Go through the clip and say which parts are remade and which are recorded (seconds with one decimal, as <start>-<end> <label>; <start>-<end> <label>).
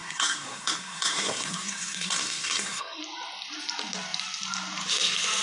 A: 0.0-3.0 remade; 3.0-5.4 recorded